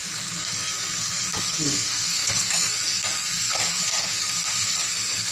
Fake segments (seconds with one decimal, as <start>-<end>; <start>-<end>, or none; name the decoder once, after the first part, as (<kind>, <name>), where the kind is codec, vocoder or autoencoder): 0.0-5.3 (codec, SNAC)